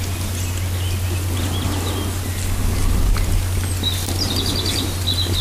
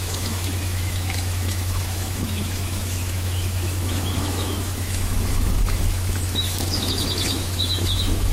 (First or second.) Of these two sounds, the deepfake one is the second